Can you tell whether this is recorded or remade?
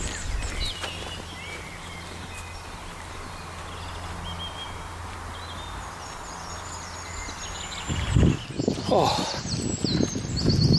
recorded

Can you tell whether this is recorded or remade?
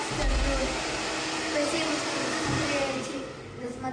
recorded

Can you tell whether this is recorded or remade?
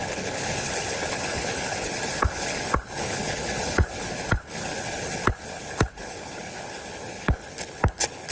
remade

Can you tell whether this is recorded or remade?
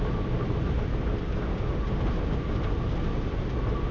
recorded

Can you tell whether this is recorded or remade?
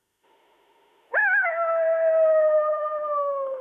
remade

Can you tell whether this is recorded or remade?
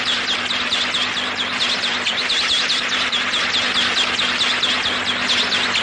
recorded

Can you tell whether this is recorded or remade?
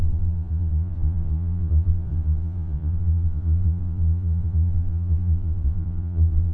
remade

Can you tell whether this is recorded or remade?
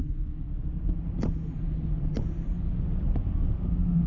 recorded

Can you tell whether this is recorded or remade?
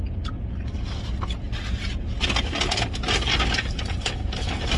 recorded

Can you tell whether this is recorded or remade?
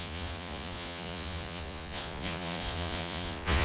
remade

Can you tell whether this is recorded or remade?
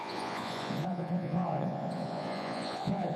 remade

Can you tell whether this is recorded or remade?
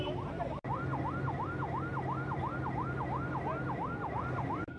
recorded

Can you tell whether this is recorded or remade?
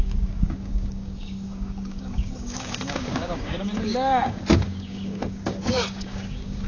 remade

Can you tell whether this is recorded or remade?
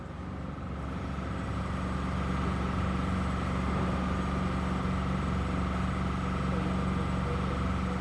recorded